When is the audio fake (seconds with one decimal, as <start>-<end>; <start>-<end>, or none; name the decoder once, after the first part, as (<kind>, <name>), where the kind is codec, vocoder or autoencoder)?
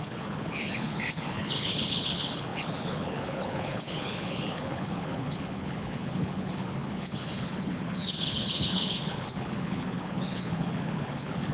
0.0-11.5 (codec, HILCodec)